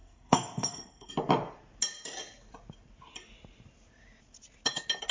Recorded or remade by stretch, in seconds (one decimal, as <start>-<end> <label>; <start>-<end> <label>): 0.0-1.1 remade; 1.1-5.1 recorded